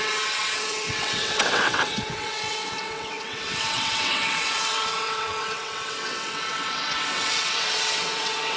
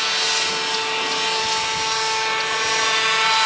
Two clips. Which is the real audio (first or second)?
second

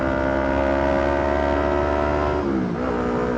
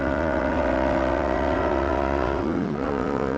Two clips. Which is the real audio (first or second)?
first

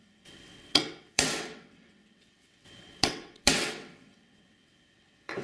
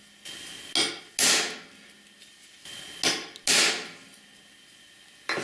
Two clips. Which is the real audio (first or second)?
second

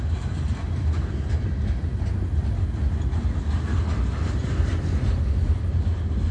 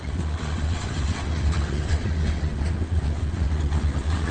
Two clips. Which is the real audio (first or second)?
first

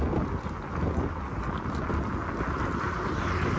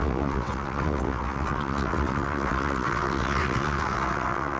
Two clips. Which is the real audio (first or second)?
first